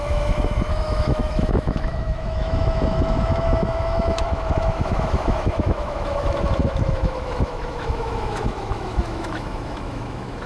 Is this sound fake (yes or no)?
yes